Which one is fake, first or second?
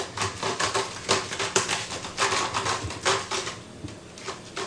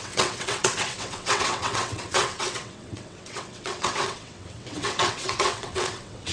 second